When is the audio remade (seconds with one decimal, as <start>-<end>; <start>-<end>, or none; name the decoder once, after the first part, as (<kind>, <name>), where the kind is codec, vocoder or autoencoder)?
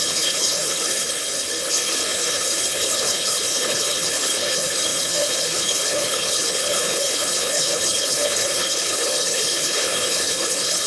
0.0-10.9 (codec, HILCodec)